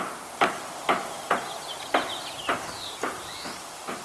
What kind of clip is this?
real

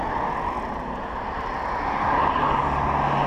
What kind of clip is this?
real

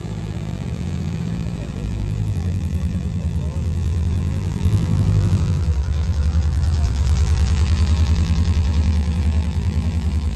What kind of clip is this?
fake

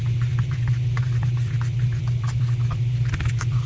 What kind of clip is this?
real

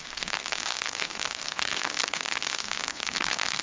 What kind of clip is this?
fake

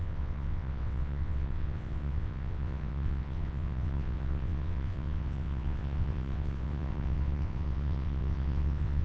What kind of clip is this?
fake